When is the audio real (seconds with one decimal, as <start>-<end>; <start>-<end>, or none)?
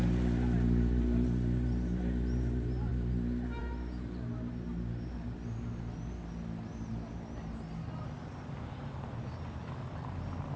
0.0-10.6